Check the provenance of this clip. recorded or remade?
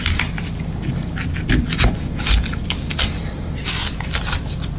recorded